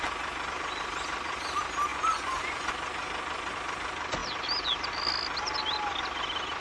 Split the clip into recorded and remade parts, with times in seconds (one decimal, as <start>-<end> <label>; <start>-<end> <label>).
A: 0.0-1.9 recorded; 1.9-2.7 remade; 2.7-6.6 recorded